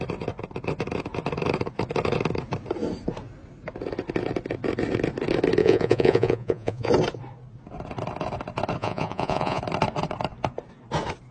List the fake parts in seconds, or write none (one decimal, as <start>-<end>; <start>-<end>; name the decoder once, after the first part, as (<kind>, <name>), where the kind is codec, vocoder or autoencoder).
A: 5.6-6.9 (vocoder, Vocos); 8.8-9.6